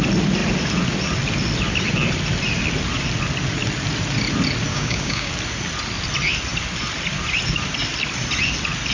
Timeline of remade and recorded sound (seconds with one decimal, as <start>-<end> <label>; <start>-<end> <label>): 0.0-4.7 recorded; 4.7-5.3 remade; 5.3-8.9 recorded